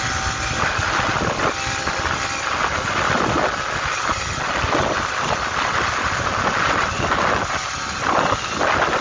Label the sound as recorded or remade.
recorded